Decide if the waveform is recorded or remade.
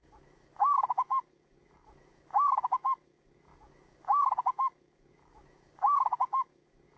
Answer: remade